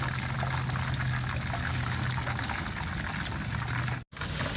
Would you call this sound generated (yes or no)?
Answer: no